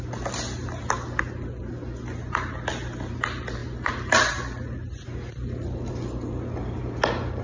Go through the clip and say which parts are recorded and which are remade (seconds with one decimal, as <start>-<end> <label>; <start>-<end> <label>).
0.0-7.4 recorded